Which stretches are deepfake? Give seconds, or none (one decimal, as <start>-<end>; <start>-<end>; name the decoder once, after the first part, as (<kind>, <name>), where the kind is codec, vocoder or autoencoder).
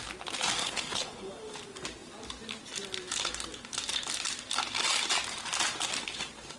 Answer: 0.6-1.3 (codec, HILCodec)